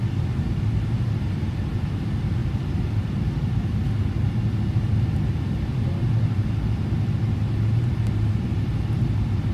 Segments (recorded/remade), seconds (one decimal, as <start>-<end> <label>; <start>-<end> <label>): 0.0-9.5 recorded